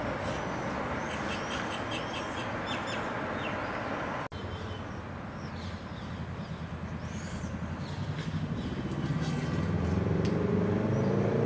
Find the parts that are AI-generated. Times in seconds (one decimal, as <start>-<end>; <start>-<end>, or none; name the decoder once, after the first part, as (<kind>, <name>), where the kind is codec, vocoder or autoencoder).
none